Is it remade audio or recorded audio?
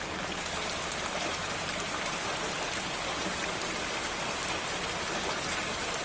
recorded